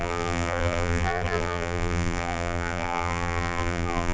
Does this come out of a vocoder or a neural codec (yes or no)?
yes